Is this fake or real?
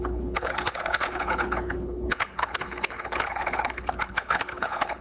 fake